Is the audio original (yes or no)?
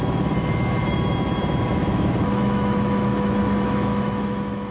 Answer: no